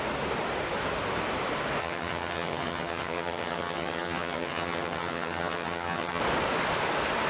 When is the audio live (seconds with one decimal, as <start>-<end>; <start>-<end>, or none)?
0.0-1.8; 6.2-7.3